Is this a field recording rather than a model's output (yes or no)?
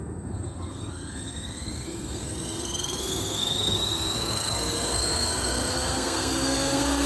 no